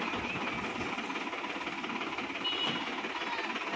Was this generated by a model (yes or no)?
no